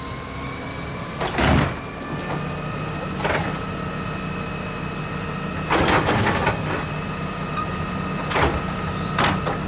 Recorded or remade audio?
recorded